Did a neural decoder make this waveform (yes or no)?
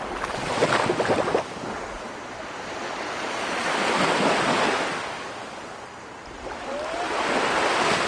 no